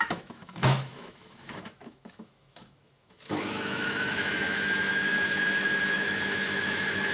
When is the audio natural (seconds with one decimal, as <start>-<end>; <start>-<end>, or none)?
none